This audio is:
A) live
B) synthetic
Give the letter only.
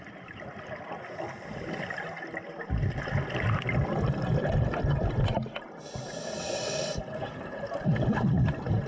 A